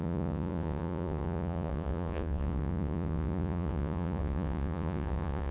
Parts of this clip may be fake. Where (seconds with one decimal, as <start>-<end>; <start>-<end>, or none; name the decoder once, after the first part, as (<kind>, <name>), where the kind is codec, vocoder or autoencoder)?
0.0-5.5 (vocoder, Vocos)